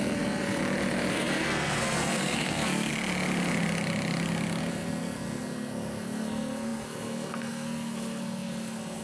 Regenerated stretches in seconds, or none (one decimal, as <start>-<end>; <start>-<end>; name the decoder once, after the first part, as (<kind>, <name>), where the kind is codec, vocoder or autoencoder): 0.0-0.6 (codec, SNAC); 1.1-2.9; 4.6-9.0